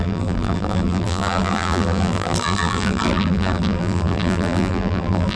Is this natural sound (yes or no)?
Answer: no